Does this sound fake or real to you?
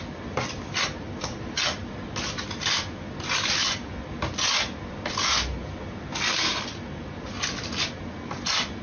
real